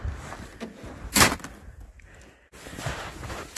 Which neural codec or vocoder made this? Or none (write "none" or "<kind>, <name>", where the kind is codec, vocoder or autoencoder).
none